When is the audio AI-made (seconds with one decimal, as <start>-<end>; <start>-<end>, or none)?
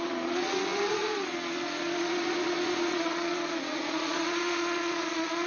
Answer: 0.0-5.5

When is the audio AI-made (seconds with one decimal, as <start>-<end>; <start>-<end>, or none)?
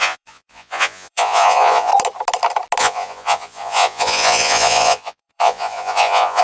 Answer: 0.0-1.9; 2.8-6.4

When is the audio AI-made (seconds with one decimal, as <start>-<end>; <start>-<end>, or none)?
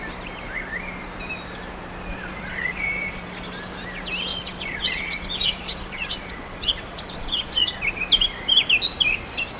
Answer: 2.1-3.2; 4.3-7.8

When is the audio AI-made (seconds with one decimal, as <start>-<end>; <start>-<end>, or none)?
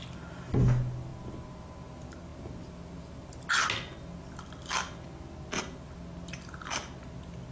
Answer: none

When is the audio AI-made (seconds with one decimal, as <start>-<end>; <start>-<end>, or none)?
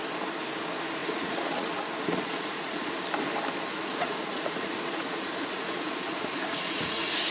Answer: 1.0-2.9; 3.7-7.3